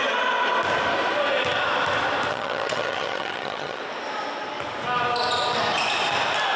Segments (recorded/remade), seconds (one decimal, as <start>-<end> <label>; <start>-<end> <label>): 0.0-2.3 recorded; 2.3-3.8 remade; 3.8-6.6 recorded